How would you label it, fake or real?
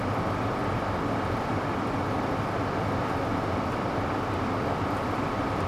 real